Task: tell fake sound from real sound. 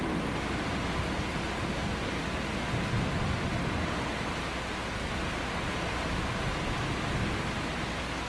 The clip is real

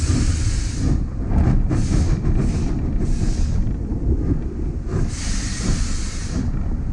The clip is real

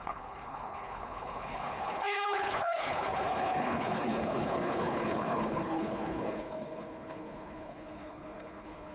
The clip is fake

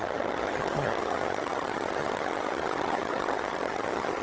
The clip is fake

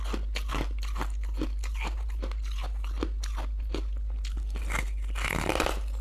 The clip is real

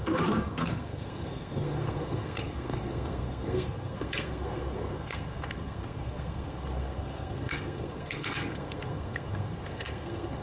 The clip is fake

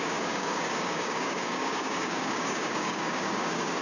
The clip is fake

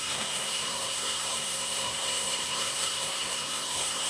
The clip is fake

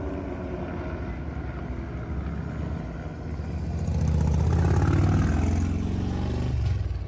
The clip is real